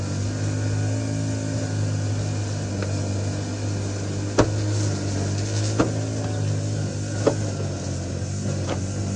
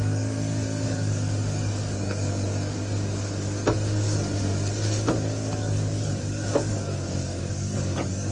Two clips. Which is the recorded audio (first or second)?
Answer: first